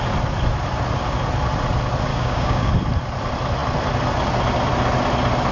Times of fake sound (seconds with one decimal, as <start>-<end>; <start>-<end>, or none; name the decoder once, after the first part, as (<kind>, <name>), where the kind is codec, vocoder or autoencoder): 2.1-2.7 (codec, DAC)